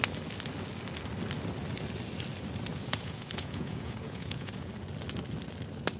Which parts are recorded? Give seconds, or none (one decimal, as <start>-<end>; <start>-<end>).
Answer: 0.0-2.7; 4.7-6.0

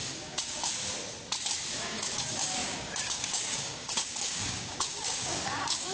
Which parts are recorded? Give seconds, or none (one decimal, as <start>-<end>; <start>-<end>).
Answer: 0.7-1.8

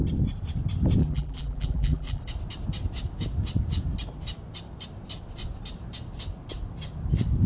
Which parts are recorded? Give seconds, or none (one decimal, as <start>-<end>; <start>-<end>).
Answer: 0.0-1.0; 2.2-7.5

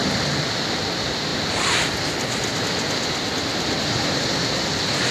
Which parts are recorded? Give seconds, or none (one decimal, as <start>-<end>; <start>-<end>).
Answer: 0.0-5.1

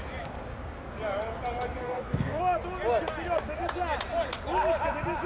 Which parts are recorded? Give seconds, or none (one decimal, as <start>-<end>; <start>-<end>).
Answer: 0.0-1.8; 2.4-5.3